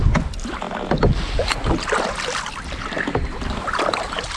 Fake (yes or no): no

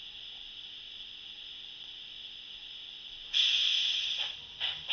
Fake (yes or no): no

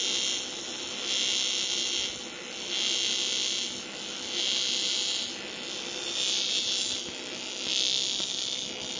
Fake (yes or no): no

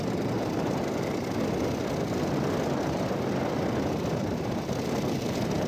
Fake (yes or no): no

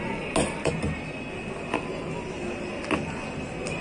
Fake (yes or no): no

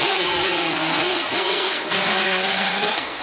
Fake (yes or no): yes